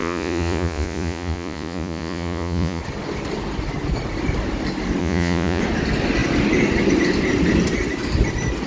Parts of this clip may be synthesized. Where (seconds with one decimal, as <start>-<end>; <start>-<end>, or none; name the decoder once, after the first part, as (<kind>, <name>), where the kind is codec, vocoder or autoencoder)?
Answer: 0.0-2.8 (vocoder, Vocos); 5.0-5.6